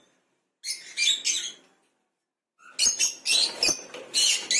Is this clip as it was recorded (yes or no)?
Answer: yes